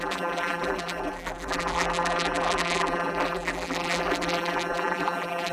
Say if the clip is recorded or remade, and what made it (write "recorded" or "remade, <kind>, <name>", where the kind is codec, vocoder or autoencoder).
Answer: remade, vocoder, BigVGAN v2